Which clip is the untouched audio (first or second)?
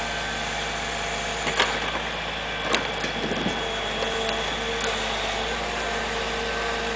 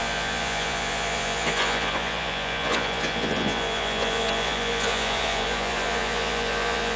first